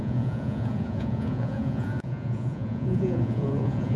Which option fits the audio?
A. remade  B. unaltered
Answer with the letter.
A